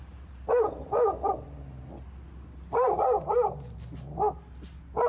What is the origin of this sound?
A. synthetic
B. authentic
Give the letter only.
B